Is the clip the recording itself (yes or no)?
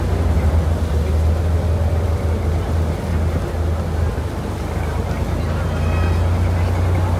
yes